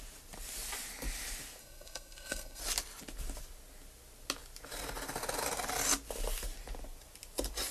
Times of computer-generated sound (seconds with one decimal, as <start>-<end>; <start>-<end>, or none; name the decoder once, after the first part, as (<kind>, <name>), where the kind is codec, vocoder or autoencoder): 1.6-2.6 (codec, SNAC)